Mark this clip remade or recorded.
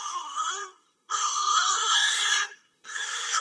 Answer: remade